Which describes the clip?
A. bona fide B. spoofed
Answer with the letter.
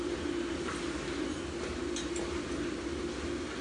A